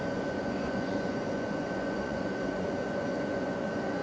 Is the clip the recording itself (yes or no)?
no